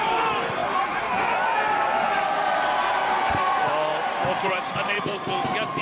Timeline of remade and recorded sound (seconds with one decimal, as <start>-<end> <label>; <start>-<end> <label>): 0.0-3.9 recorded; 3.9-5.3 remade; 5.3-5.8 recorded